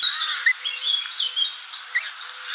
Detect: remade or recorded remade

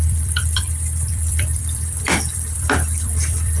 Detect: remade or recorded remade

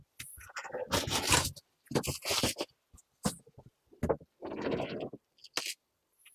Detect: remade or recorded recorded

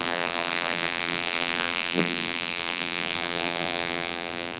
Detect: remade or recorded remade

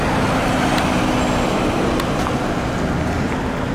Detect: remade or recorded recorded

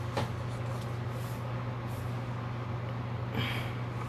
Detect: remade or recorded recorded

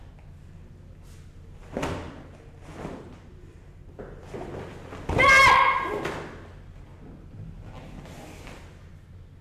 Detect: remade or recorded recorded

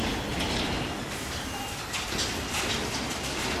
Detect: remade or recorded recorded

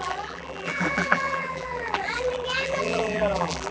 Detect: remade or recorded remade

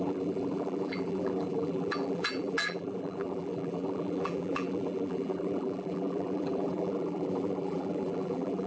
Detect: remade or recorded remade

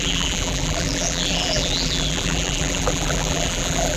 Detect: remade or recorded remade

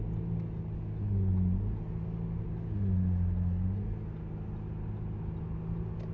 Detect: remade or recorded recorded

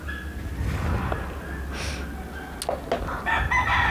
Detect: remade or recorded recorded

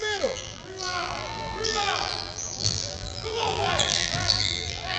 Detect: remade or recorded remade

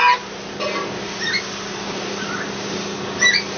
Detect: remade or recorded recorded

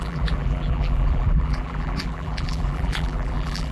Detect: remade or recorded remade